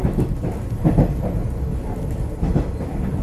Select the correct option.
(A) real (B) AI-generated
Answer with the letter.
A